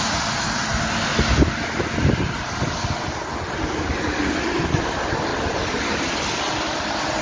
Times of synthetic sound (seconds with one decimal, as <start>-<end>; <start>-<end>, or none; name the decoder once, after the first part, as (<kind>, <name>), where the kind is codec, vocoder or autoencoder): 0.0-1.1 (vocoder, BigVGAN v2); 4.2-5.3

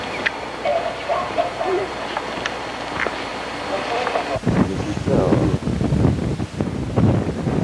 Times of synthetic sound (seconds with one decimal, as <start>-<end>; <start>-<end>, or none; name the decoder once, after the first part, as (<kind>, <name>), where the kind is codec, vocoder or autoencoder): 0.7-1.9 (vocoder, BigVGAN v2)

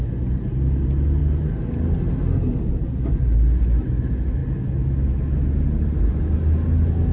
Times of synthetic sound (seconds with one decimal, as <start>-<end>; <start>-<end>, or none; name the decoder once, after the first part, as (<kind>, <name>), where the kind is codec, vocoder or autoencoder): none

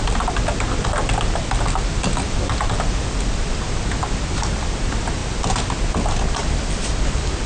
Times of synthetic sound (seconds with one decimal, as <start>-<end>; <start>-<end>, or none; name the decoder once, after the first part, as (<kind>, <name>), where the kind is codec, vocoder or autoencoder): none

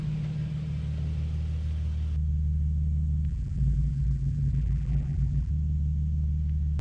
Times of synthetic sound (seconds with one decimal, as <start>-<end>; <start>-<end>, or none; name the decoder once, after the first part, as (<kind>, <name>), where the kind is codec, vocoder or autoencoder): 3.3-5.5 (vocoder, BigVGAN v2)

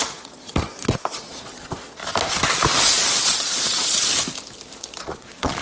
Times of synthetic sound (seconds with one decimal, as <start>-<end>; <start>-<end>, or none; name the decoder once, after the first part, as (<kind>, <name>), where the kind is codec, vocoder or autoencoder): 0.0-2.0 (vocoder, Vocos); 2.8-4.1; 5.0-5.6